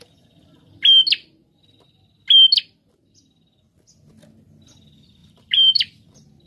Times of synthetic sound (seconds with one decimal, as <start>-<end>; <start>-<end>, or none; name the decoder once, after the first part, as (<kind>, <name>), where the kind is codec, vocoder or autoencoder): 5.2-6.5 (vocoder, BigVGAN v2)